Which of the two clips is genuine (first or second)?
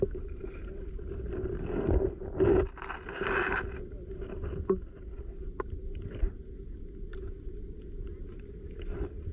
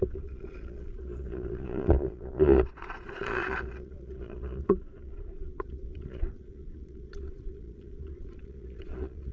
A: first